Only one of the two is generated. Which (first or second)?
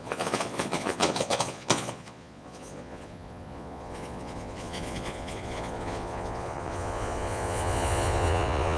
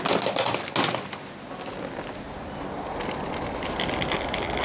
first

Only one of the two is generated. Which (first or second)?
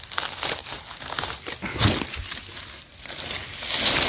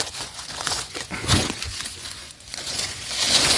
second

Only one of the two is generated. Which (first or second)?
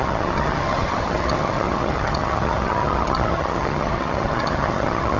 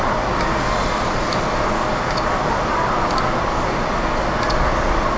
first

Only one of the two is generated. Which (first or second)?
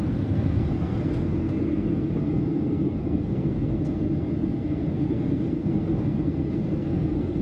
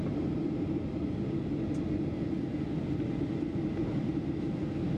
first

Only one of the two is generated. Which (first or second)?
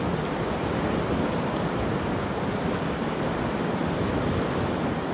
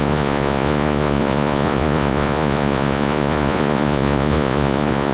second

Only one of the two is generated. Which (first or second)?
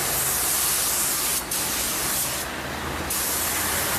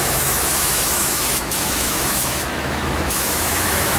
second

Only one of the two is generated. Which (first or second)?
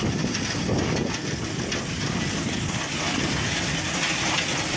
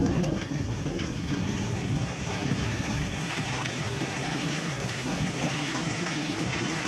second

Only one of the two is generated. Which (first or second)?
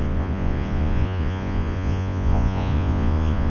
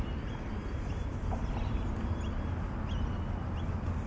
first